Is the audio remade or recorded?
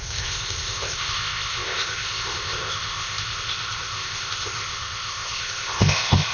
remade